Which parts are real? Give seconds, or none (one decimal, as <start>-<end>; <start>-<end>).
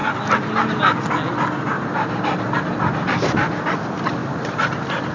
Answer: 0.0-5.1